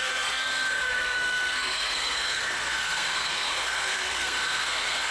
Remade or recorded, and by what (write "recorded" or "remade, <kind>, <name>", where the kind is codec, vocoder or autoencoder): remade, codec, SNAC